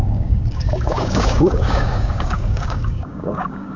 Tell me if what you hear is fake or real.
fake